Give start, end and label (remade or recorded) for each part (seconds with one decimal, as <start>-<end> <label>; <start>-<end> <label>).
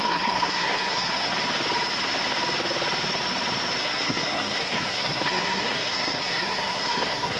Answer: 0.0-1.3 remade; 1.3-3.8 recorded; 3.8-7.4 remade